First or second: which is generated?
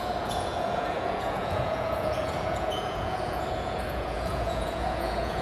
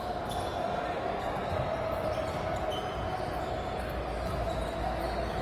first